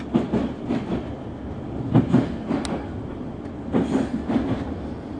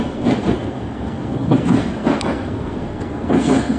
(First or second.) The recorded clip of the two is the first